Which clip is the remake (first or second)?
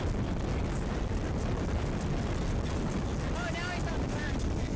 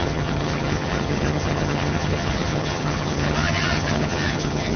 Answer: second